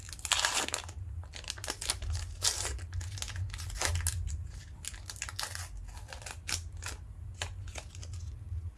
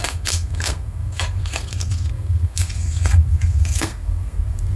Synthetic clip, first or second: second